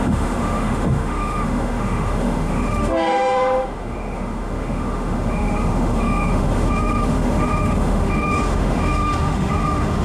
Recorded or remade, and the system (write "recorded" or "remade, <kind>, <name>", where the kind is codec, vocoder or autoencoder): remade, autoencoder, DAC-VAE